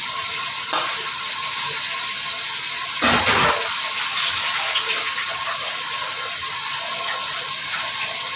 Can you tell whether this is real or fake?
real